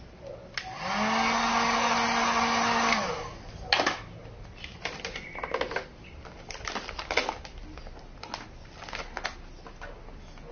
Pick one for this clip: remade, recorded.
recorded